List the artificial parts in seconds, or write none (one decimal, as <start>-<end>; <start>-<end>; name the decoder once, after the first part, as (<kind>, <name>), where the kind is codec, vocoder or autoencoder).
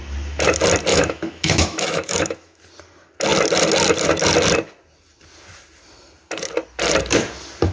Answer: 0.9-2.6 (autoencoder, DAC-VAE)